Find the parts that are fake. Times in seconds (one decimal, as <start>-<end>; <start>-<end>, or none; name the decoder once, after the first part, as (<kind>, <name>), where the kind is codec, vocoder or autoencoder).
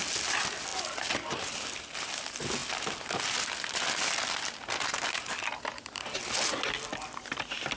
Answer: 0.7-2.1 (vocoder, BigVGAN v2)